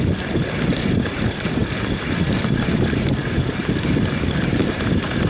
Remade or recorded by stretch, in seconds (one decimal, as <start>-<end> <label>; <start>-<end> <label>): 0.0-5.3 recorded